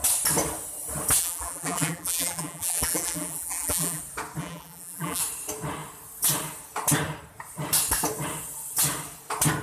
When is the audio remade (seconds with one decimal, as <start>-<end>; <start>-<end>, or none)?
1.2-4.0; 4.4-5.2